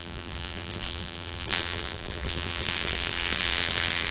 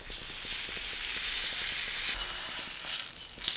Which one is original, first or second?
second